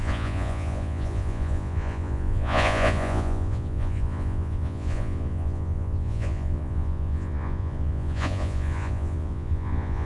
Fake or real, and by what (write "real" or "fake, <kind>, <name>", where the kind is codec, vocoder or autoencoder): fake, vocoder, Vocos